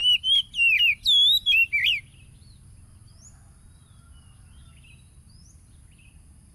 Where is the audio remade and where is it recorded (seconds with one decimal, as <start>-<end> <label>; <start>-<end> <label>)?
0.0-6.5 recorded